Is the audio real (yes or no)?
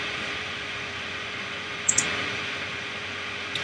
no